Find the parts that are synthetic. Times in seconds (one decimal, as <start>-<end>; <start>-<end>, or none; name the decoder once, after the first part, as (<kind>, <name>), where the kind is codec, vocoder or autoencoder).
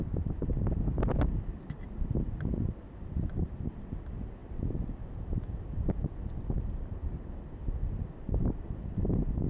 none